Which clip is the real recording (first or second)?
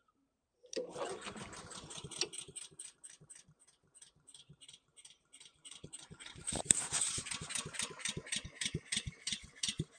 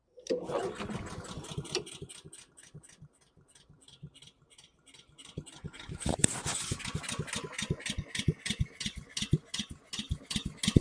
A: second